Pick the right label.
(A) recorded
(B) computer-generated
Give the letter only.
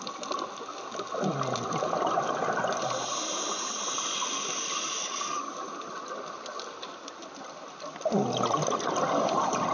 A